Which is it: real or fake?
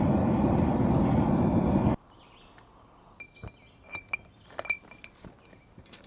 real